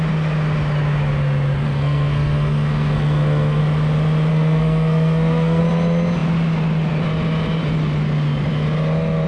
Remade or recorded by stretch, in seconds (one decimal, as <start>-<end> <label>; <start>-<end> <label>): 0.0-1.7 recorded; 1.7-3.6 remade; 3.6-4.3 recorded; 4.3-5.6 remade; 5.6-9.3 recorded